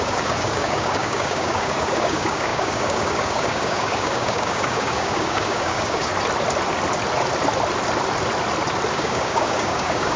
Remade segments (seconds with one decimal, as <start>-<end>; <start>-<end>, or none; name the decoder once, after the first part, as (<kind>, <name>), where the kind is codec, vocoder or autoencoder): 0.0-6.1 (codec, DAC); 8.9-10.2